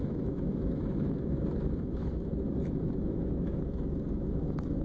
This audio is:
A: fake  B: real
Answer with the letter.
A